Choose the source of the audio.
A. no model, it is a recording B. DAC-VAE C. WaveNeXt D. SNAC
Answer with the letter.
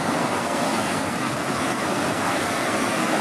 D